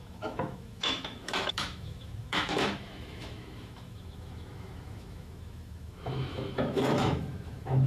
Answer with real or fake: fake